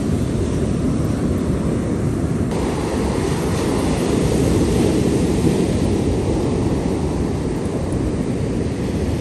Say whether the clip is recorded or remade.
recorded